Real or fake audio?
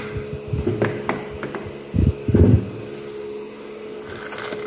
real